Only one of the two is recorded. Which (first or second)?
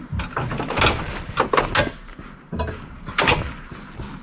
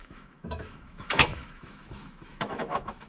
first